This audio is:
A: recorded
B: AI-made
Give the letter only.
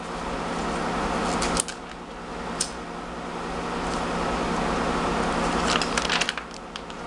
A